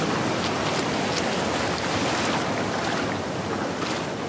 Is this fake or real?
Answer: real